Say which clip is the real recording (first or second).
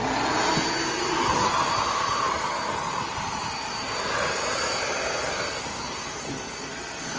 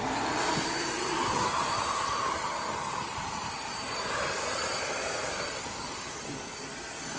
first